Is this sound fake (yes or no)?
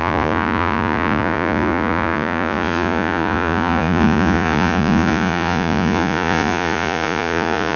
yes